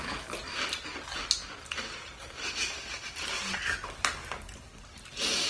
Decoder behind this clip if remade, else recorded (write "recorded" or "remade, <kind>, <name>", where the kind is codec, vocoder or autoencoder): recorded